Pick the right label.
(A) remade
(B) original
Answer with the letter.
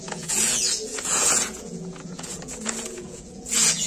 A